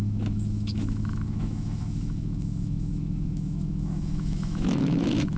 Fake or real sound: fake